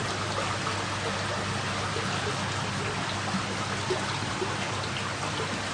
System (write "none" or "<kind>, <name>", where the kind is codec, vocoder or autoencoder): none